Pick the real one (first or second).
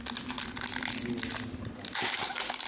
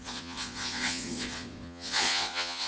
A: first